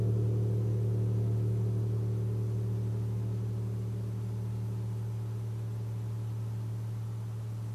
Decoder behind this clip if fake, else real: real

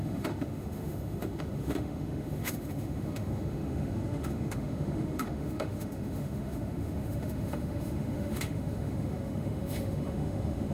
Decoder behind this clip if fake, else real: fake, autoencoder, DAC-VAE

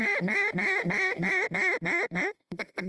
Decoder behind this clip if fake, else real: fake, autoencoder, DAC-VAE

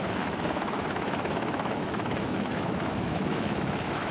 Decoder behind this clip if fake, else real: fake, autoencoder, DAC-VAE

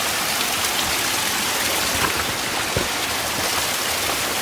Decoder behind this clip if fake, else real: real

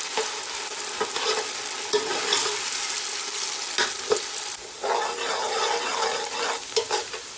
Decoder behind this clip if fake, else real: real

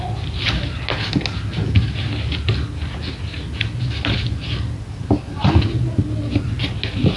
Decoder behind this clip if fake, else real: real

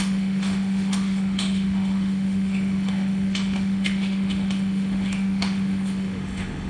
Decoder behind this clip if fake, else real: fake, autoencoder, DAC-VAE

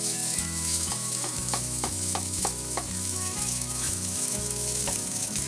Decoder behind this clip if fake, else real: fake, autoencoder, DAC-VAE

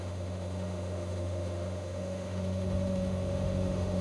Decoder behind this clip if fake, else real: fake, autoencoder, DAC-VAE